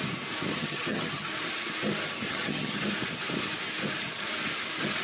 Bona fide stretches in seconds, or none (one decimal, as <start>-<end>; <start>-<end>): 0.0-0.5; 1.3-2.3; 2.8-5.0